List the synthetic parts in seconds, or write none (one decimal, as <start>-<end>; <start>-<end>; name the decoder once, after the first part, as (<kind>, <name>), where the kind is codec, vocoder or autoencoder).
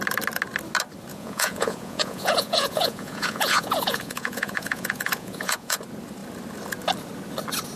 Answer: 1.1-5.8 (vocoder, Vocos)